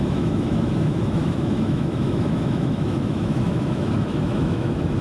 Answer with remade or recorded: remade